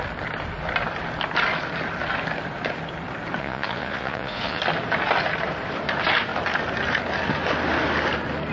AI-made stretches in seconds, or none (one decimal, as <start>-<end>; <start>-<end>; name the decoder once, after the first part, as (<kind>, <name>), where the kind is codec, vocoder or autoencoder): 3.4-4.6 (vocoder, Vocos)